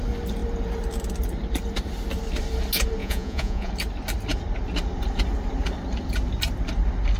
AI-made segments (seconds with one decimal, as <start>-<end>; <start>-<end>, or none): 3.0-3.7